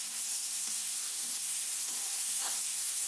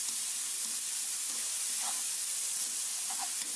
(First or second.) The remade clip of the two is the first